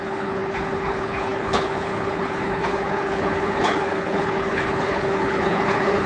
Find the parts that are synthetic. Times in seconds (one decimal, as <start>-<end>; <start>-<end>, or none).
0.0-6.1